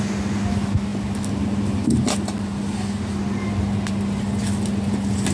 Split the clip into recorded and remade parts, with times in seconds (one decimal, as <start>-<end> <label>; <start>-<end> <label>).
0.0-5.3 recorded